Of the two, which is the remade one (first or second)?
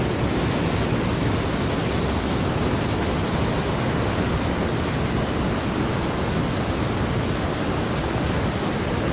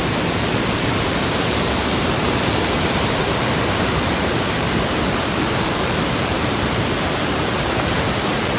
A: second